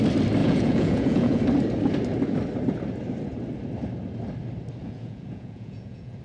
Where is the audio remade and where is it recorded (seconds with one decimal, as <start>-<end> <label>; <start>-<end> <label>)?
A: 0.0-0.4 recorded; 0.4-1.4 remade; 1.4-4.8 recorded; 4.8-6.2 remade

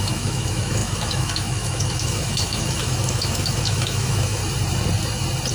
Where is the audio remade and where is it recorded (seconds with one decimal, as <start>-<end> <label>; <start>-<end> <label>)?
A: 0.0-4.4 remade; 4.4-5.5 recorded

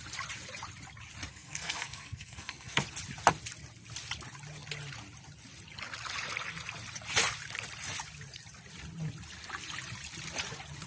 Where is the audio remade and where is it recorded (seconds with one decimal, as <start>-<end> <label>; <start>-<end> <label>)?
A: 0.0-1.3 recorded; 1.3-2.8 remade; 2.8-10.9 recorded

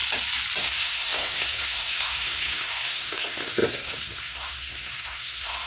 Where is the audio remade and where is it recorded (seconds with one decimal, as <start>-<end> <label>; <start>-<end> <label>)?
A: 0.0-0.6 recorded; 0.6-5.7 remade

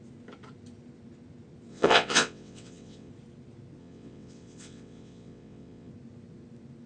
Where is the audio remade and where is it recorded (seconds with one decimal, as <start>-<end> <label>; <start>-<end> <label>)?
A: 0.0-1.7 recorded; 1.7-3.1 remade; 3.1-3.8 recorded; 3.8-5.9 remade; 5.9-6.9 recorded

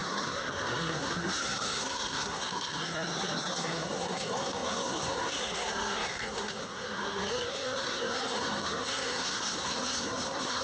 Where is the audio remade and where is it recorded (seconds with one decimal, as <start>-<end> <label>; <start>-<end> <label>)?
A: 0.0-10.6 remade